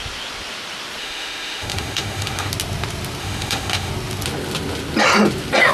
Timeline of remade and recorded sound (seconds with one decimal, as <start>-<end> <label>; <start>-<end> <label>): 0.0-1.0 recorded; 1.0-2.5 remade; 2.5-3.2 recorded; 3.2-3.9 remade; 3.9-5.7 recorded